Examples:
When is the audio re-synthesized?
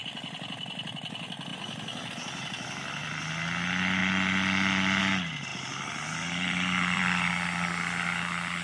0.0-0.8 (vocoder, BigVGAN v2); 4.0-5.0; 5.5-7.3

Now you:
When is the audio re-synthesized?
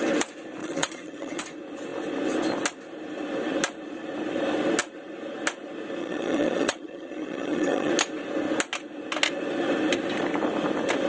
0.6-1.4 (vocoder, HiFi-GAN); 6.0-7.9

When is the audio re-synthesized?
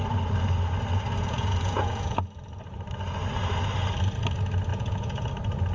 1.2-2.3 (vocoder, Vocos); 4.7-5.3